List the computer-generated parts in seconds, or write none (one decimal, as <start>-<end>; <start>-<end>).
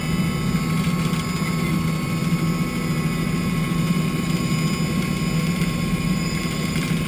3.2-4.5; 5.4-7.1